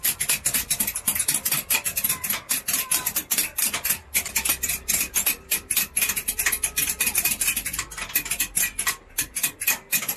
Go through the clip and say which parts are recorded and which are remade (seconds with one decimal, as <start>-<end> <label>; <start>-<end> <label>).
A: 0.0-1.1 remade; 1.1-1.7 recorded; 1.7-10.2 remade